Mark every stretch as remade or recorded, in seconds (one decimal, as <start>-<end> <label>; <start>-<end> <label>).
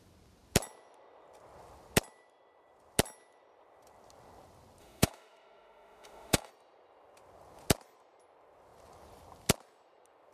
0.0-4.8 recorded; 4.8-6.5 remade; 6.5-10.3 recorded